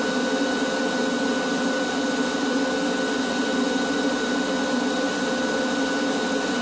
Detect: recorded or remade recorded